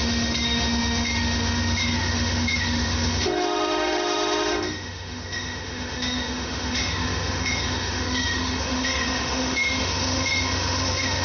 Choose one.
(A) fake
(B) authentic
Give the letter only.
A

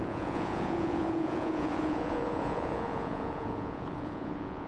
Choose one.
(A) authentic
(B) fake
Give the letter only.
B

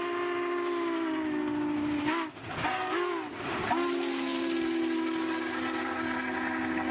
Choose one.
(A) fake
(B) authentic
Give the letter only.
B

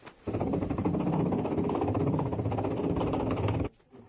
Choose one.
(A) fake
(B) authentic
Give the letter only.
A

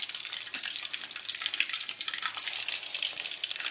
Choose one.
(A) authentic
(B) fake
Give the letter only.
A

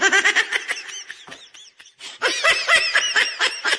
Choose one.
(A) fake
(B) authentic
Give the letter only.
B